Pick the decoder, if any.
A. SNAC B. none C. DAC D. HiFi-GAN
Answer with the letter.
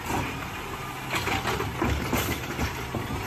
B